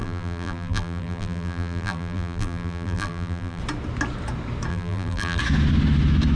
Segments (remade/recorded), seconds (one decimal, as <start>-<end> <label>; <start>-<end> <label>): 0.0-3.6 remade; 3.6-4.7 recorded; 4.7-5.4 remade; 5.4-6.4 recorded